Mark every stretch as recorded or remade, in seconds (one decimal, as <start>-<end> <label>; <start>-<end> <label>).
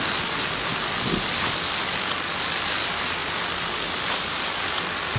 0.0-5.2 recorded